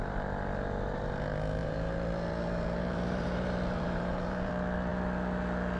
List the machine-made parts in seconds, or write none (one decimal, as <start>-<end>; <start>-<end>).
1.6-4.5